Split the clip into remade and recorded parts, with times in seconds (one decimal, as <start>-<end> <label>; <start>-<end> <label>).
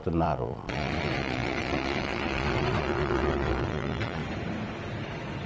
0.0-4.2 remade; 4.2-5.5 recorded